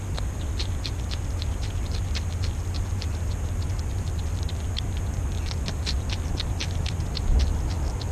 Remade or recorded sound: recorded